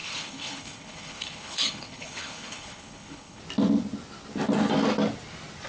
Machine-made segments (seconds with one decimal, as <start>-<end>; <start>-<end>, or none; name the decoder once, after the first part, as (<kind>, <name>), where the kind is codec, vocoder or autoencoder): 0.0-3.4 (codec, HILCodec)